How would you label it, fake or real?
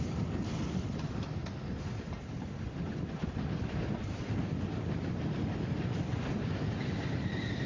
real